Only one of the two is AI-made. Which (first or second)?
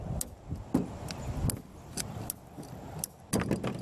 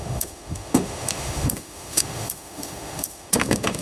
second